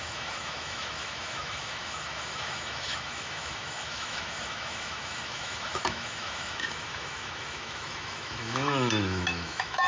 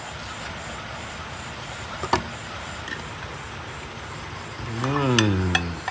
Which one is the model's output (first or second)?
first